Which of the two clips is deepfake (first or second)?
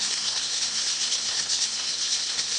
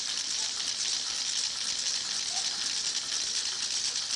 first